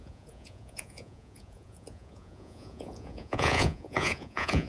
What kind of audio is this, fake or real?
fake